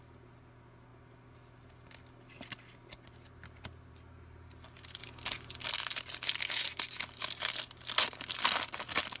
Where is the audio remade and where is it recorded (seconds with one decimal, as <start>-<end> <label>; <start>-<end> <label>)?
0.0-9.2 recorded